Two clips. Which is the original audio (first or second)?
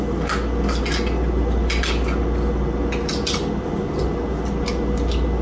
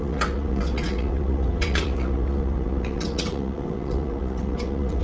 first